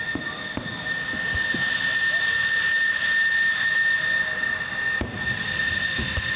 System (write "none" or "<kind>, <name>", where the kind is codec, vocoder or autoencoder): none